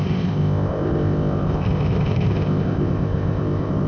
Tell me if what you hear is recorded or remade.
remade